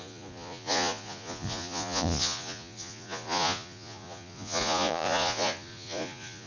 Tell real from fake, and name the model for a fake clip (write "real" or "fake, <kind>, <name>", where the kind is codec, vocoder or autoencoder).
fake, vocoder, Vocos